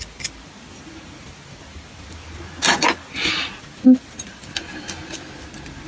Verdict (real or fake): real